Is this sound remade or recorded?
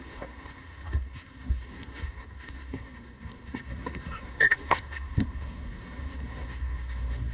remade